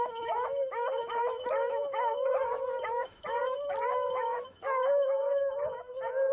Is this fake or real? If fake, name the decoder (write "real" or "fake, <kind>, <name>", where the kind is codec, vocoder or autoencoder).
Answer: fake, autoencoder, DAC-VAE